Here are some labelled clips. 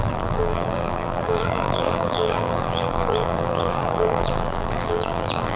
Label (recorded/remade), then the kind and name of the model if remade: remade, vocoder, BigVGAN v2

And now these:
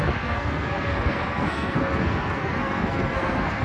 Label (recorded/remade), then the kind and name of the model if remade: remade, codec, SNAC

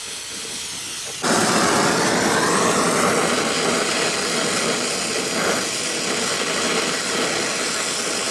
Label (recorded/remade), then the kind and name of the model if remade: recorded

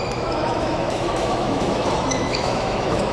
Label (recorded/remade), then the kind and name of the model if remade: remade, autoencoder, DAC-VAE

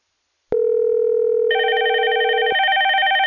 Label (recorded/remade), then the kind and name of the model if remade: recorded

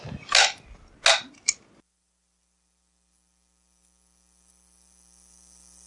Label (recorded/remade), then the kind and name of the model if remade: recorded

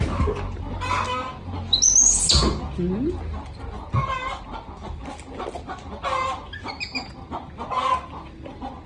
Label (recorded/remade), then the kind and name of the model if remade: recorded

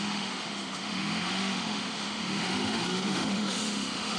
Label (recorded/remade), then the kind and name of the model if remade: remade, autoencoder, DAC-VAE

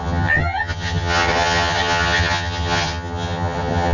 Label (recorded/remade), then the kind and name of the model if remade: remade, vocoder, HiFi-GAN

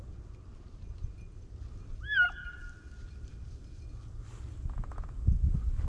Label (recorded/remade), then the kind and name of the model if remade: recorded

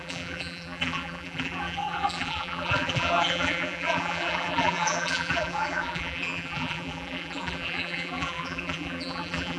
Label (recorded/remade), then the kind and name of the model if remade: remade, vocoder, BigVGAN v2